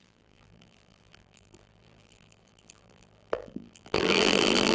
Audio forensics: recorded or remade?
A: remade